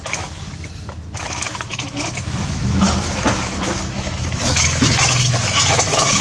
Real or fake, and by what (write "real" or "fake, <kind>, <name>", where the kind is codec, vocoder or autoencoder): fake, autoencoder, DAC-VAE